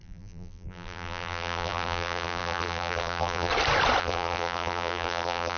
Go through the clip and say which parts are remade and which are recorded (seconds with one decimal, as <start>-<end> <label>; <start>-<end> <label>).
0.0-3.5 remade; 3.5-4.0 recorded; 4.0-5.6 remade